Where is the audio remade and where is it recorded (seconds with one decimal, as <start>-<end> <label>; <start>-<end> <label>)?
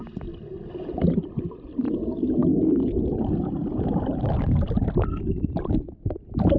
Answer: 0.0-6.6 recorded